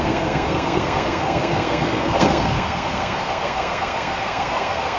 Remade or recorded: remade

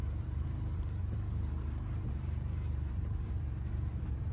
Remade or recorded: remade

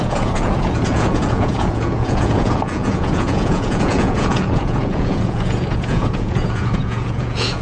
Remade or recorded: remade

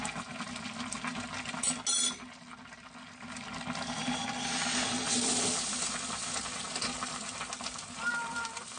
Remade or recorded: recorded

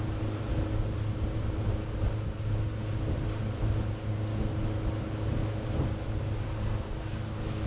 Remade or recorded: recorded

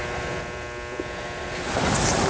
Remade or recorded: recorded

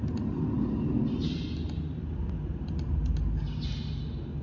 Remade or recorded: recorded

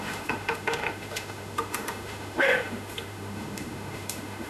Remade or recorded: remade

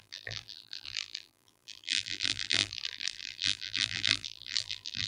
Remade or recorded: remade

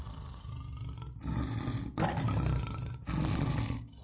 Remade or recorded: recorded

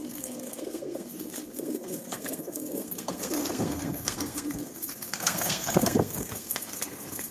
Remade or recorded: remade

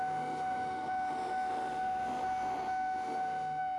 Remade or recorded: remade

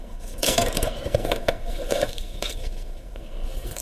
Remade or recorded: remade